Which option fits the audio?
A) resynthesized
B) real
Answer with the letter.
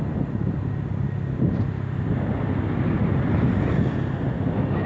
B